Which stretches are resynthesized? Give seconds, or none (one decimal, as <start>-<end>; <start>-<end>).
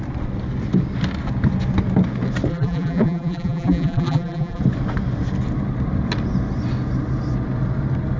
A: 2.5-4.6